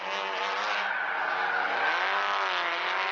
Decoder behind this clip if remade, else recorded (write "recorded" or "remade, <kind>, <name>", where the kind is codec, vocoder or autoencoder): recorded